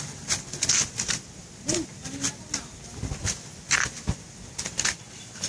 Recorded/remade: recorded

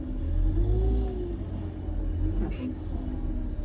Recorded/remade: recorded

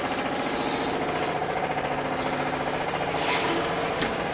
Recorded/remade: recorded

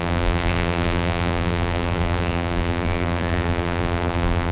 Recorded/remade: remade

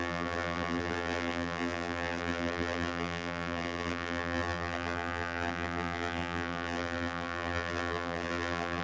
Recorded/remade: remade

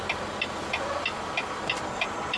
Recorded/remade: remade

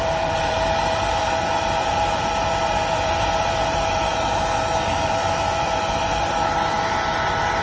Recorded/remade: remade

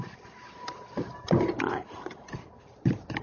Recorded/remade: remade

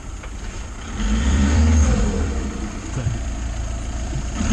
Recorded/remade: remade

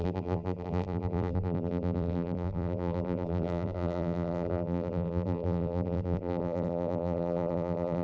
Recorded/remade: remade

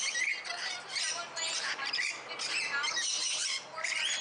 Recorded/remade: remade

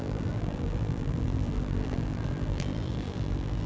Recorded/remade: remade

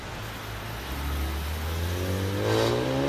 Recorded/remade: recorded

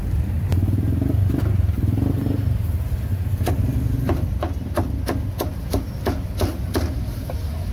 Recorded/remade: recorded